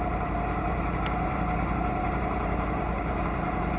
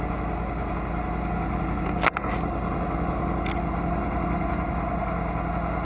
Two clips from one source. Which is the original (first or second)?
second